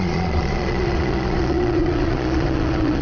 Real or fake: fake